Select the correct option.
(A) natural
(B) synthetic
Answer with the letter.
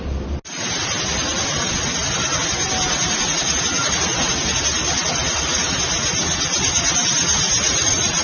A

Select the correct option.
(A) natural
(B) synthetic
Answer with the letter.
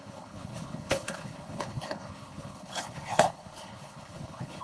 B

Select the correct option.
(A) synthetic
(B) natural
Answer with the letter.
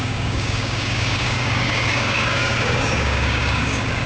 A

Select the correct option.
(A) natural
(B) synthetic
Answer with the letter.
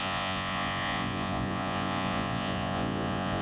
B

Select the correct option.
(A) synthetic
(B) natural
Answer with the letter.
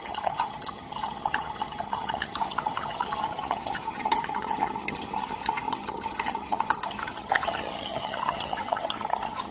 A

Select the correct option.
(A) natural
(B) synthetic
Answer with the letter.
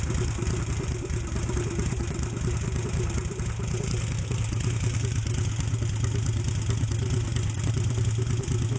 A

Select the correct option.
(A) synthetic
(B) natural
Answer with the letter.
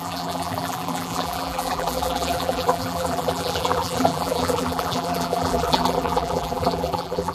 A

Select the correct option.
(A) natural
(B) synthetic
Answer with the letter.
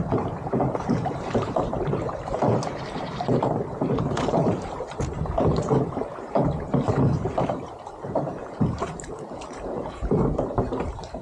B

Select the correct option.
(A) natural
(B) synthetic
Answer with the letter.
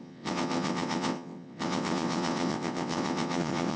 B